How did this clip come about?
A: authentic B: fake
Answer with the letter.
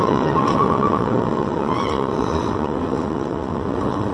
B